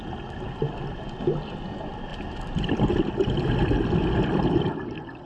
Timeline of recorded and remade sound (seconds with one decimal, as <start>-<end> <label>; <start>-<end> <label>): 0.0-5.3 recorded